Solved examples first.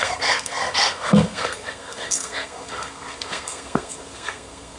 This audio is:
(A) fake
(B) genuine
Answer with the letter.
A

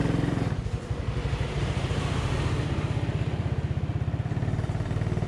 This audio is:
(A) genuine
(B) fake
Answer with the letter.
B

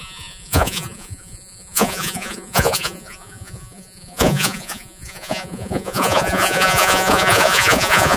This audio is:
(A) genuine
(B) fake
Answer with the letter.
B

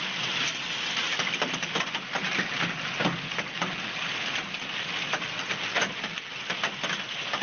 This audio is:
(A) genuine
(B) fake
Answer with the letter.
A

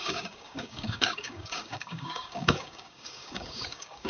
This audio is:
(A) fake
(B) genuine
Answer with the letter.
A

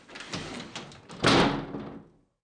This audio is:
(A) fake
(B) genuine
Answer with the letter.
B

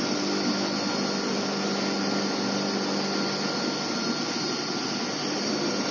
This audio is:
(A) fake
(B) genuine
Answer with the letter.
B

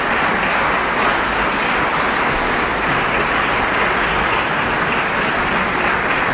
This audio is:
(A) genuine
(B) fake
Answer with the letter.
A